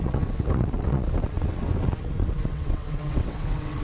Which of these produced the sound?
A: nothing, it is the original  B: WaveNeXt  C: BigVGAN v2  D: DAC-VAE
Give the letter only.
B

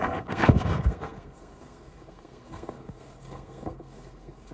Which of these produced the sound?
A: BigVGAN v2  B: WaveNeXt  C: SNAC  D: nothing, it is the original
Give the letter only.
C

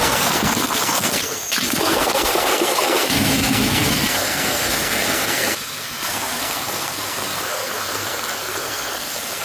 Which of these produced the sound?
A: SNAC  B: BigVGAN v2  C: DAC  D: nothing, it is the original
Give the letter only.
A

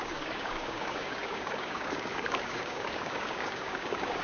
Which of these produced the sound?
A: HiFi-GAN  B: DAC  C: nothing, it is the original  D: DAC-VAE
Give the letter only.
B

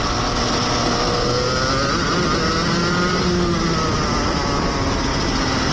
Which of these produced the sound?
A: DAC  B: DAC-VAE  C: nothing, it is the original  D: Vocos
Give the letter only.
C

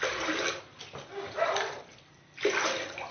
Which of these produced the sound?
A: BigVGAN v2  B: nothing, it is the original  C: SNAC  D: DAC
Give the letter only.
A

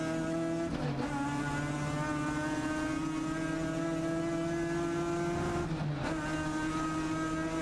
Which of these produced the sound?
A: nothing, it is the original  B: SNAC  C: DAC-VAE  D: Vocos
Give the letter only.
A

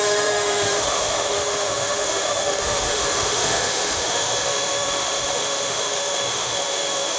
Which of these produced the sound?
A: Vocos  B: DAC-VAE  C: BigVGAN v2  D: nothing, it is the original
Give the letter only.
B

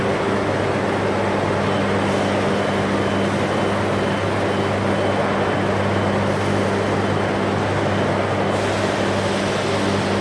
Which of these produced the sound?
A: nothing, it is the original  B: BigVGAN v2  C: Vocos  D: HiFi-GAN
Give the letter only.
A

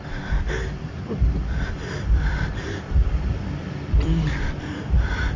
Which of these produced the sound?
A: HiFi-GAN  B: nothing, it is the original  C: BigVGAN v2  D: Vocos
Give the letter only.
C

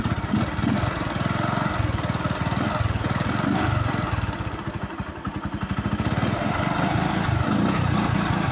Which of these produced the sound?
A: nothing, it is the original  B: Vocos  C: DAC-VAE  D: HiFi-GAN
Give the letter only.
A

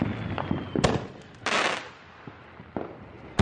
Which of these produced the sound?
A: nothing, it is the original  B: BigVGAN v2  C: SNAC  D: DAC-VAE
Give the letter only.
A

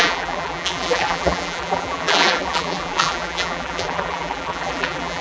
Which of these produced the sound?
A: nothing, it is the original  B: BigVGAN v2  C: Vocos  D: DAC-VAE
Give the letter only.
B